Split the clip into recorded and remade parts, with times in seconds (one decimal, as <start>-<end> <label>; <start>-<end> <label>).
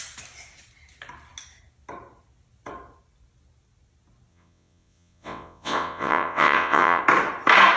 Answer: 0.0-4.3 recorded; 4.3-7.0 remade; 7.0-7.8 recorded